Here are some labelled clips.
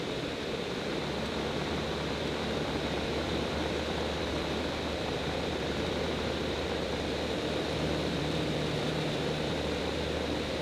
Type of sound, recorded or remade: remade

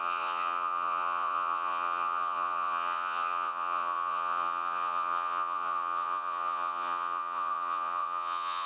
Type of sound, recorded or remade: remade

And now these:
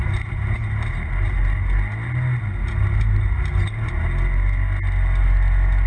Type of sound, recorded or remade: recorded